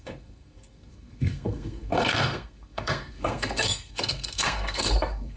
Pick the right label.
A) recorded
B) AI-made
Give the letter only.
B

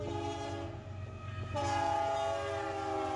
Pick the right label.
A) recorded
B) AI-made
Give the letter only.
A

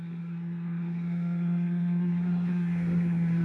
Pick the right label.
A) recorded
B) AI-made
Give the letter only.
B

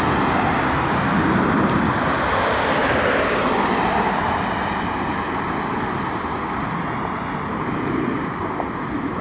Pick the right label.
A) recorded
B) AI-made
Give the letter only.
A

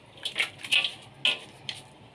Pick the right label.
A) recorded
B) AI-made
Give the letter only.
A